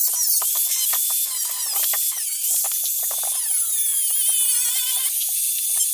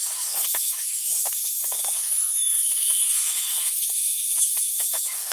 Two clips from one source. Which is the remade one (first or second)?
second